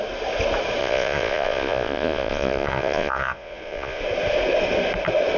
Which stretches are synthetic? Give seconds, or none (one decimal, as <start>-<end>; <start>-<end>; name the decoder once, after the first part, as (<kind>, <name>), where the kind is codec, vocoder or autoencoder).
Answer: 0.8-4.0 (vocoder, Vocos)